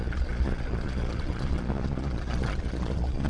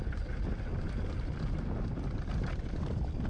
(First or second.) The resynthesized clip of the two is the first